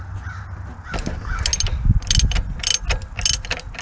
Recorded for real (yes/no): yes